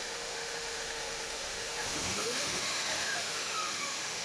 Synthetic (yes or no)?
yes